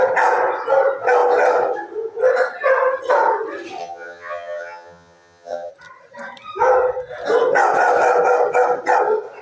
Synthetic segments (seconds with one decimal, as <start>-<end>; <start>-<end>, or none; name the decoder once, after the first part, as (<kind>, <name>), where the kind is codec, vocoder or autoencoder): 3.8-5.7 (vocoder, HiFi-GAN)